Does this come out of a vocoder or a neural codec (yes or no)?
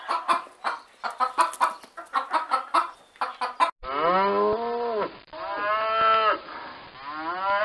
no